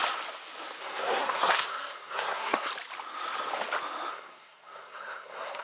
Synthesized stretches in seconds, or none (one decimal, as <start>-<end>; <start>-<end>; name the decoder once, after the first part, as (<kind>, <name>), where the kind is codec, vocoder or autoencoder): 0.8-2.7 (codec, SNAC); 4.1-5.6

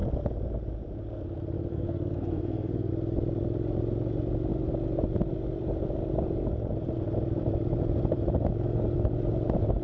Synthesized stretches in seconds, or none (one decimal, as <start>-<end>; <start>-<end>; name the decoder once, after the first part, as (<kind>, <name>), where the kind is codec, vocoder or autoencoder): 1.7-2.9 (codec, SNAC)